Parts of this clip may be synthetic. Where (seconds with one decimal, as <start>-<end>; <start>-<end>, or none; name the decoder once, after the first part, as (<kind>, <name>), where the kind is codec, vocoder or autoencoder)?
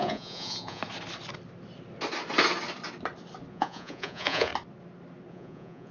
0.0-0.8 (vocoder, Vocos); 3.5-4.5; 5.3-5.9